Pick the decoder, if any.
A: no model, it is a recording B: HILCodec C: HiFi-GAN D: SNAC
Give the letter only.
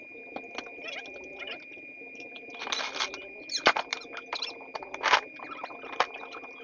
A